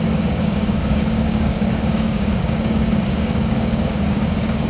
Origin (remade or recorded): remade